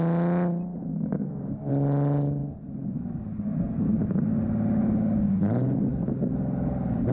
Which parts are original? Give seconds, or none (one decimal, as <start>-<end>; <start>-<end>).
0.0-0.9; 1.7-4.8; 5.4-7.1